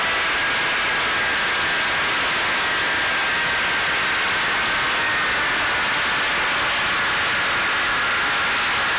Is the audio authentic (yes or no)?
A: yes